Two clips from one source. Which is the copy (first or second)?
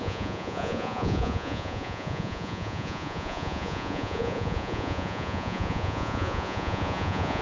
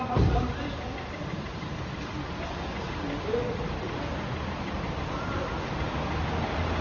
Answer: first